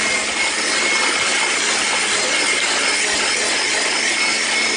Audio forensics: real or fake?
real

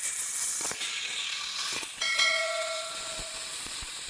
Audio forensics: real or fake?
fake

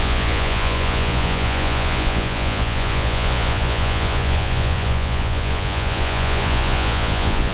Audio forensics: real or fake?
fake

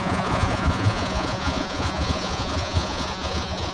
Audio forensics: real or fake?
fake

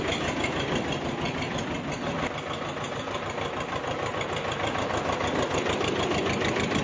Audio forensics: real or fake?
real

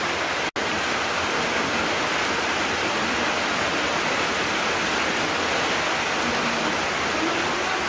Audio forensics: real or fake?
real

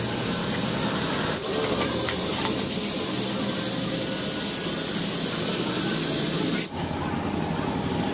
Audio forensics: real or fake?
real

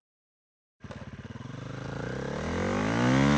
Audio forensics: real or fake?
real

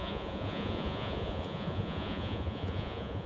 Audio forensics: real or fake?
fake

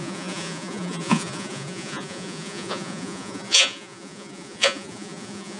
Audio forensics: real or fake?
fake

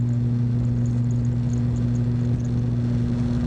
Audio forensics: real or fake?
real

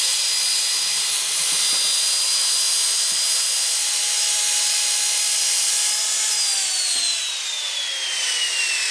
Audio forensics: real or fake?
real